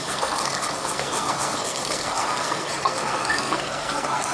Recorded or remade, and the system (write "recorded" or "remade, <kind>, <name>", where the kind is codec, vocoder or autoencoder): remade, codec, SNAC